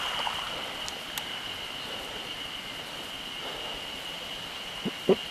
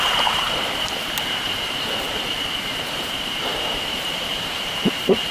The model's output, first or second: second